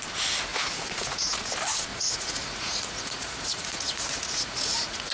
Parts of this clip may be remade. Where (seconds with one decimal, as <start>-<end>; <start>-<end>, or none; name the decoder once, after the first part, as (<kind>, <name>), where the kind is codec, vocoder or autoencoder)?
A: 0.5-1.5 (vocoder, Vocos); 1.9-5.1